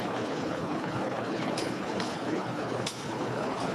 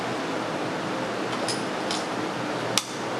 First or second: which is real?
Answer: second